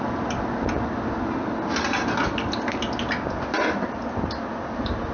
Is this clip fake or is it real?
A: real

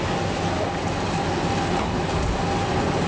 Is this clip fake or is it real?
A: real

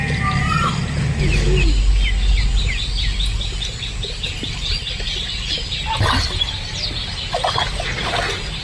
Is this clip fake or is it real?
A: real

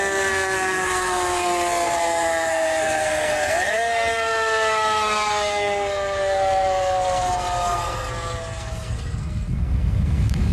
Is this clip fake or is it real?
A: fake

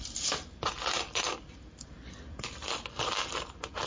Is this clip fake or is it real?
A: real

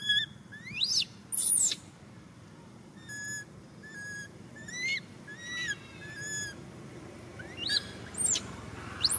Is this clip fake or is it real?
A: real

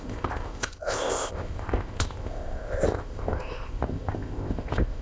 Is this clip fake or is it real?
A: fake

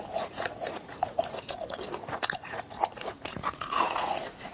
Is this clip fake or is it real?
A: fake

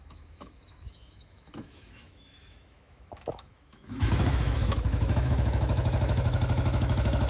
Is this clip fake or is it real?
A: fake